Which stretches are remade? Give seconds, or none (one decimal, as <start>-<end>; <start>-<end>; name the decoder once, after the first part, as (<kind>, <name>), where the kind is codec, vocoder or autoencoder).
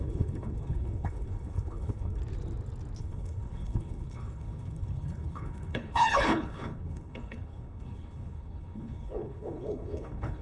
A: 0.0-2.2 (codec, HILCodec); 3.0-10.4